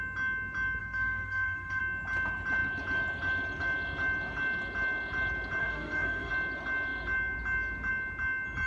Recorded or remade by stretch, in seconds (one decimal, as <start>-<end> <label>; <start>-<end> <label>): 0.0-0.8 recorded; 0.8-1.8 remade; 1.8-5.6 recorded; 5.6-6.3 remade; 6.3-8.7 recorded